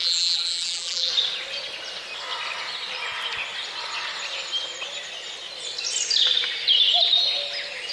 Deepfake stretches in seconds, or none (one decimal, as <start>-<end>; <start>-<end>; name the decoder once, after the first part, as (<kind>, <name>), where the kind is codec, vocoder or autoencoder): 0.0-1.1 (vocoder, BigVGAN v2)

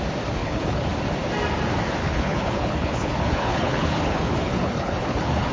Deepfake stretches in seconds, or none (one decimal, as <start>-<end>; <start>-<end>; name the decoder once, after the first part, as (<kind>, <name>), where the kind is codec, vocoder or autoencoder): 0.4-0.9 (codec, HILCodec); 2.0-5.5

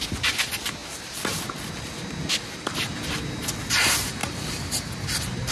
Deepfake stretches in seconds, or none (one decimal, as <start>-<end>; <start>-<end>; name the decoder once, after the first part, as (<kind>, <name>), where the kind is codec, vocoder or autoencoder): 4.2-4.7 (vocoder, BigVGAN v2)

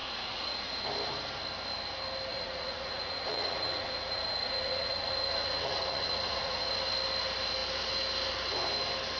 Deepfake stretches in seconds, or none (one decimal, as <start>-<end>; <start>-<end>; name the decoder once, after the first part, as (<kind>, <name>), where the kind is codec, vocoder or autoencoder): 0.0-0.8 (vocoder, Vocos); 2.3-6.7

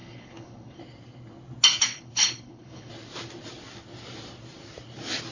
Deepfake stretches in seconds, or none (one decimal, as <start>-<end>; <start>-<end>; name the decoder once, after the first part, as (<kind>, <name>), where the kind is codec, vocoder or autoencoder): 0.0-0.8 (codec, HILCodec); 1.9-2.9

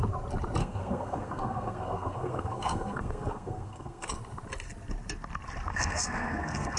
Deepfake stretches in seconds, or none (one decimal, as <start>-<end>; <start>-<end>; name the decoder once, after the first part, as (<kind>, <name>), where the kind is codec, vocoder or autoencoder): 0.6-4.1 (codec, SNAC); 5.7-6.8

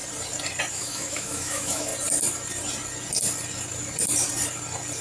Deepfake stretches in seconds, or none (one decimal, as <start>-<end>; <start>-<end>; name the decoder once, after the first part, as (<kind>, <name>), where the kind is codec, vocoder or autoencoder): 0.7-1.9 (autoencoder, DAC-VAE)

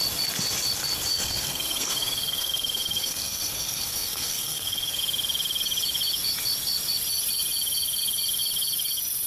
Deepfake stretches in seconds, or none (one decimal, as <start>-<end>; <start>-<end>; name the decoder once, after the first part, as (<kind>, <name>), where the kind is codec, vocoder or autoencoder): 1.1-5.0 (codec, SNAC)